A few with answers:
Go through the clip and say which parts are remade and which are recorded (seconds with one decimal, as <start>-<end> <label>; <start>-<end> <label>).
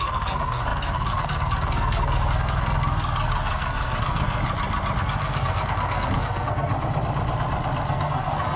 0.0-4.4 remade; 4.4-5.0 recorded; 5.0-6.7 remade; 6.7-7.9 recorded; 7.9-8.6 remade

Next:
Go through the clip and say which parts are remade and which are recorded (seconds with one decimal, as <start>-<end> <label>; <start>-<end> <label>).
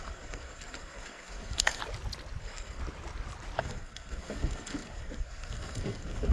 0.0-1.8 remade; 1.8-2.4 recorded; 2.4-2.8 remade; 2.8-3.6 recorded; 3.6-6.3 remade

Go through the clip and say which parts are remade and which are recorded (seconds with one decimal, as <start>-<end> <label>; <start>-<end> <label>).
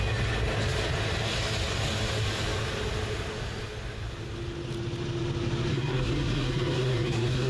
0.0-5.7 recorded; 5.7-7.5 remade